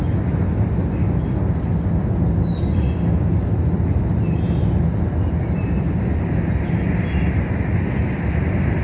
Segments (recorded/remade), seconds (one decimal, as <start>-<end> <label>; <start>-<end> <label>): 0.0-8.8 recorded